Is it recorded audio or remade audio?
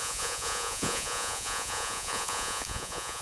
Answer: remade